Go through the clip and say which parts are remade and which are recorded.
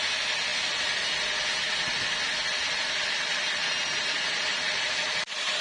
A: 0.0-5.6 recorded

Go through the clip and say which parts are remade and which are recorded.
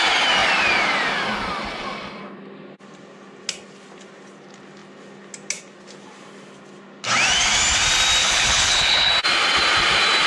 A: 0.0-8.2 recorded; 8.2-9.1 remade; 9.1-10.3 recorded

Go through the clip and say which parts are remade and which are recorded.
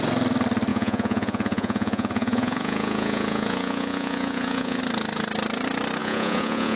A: 0.0-0.7 recorded; 0.7-4.8 remade; 4.8-6.0 recorded; 6.0-6.8 remade